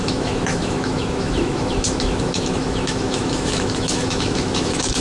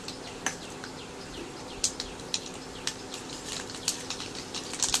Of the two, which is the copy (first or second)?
first